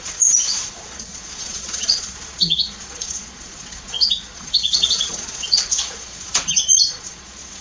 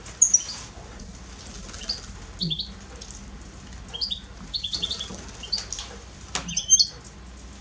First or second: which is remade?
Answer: first